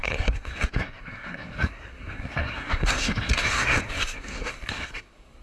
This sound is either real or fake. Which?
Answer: fake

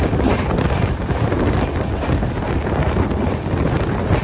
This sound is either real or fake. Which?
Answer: real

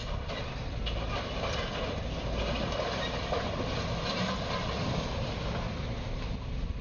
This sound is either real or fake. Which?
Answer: real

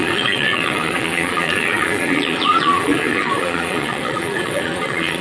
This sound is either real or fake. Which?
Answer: fake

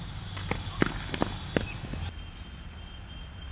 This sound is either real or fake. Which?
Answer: real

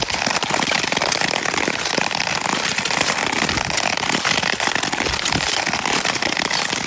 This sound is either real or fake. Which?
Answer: real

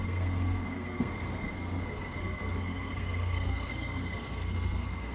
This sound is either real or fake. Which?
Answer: fake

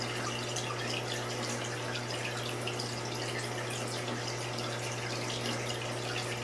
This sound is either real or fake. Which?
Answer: real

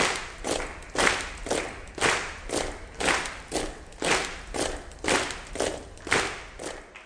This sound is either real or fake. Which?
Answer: real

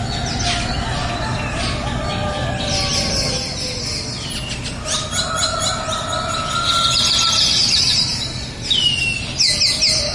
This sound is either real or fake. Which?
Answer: real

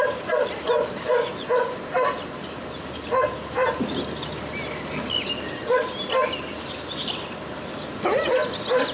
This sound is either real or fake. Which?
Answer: real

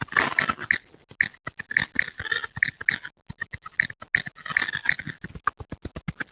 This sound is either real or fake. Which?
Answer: real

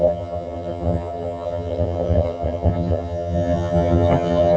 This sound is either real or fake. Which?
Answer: fake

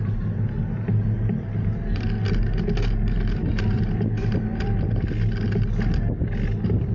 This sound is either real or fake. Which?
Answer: real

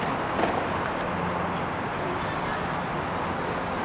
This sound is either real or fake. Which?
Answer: real